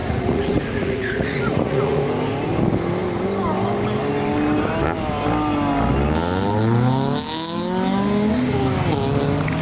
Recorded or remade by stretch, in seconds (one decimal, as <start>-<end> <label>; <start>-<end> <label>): 0.0-2.0 remade; 2.0-9.6 recorded